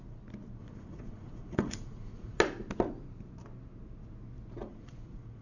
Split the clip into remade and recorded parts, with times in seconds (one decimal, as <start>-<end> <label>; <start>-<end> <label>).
0.0-0.6 recorded; 0.6-2.4 remade; 2.4-4.6 recorded; 4.6-5.4 remade